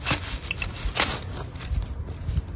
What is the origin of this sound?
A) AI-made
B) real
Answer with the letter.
B